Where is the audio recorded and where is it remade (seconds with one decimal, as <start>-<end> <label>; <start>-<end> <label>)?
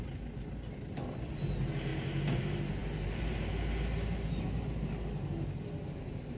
0.0-6.4 recorded